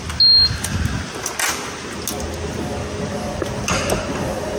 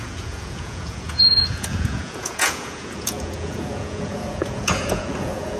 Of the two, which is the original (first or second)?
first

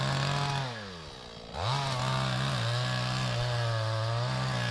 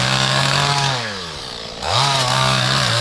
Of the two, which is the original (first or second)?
first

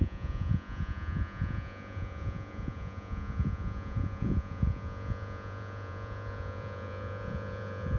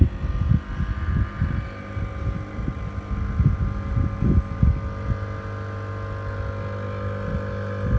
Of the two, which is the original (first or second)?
second